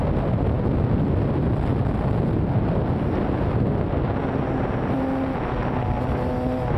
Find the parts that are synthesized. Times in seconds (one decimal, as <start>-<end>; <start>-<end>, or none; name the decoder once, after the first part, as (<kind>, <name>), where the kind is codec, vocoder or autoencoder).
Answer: none